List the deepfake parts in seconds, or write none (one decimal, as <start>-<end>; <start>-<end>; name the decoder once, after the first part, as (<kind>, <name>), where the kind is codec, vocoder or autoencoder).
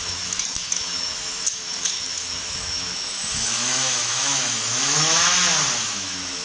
0.0-5.3 (autoencoder, DAC-VAE); 5.8-6.4